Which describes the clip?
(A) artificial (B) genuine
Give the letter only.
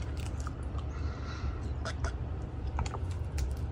B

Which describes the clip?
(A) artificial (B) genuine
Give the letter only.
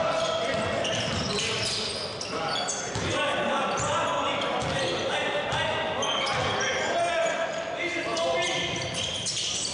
B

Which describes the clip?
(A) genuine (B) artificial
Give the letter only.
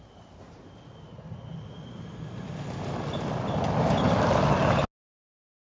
A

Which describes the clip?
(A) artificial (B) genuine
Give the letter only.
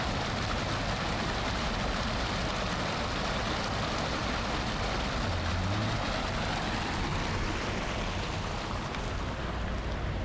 B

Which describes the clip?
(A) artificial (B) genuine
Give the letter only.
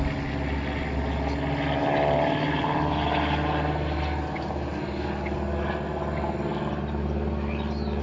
B